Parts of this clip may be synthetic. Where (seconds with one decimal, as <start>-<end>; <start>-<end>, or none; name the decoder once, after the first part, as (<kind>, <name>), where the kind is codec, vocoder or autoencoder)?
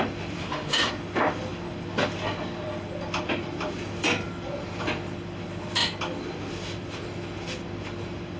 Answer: 0.4-0.9 (autoencoder, DAC-VAE)